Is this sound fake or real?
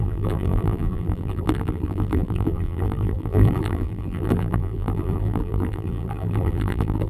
fake